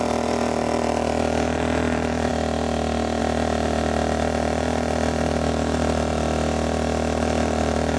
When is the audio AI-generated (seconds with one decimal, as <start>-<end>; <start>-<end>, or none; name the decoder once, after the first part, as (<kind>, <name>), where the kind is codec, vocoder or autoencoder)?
0.0-2.3 (vocoder, BigVGAN v2); 3.2-6.1; 7.2-8.0